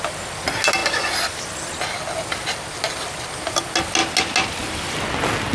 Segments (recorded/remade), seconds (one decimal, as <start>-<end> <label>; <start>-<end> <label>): 0.0-5.5 recorded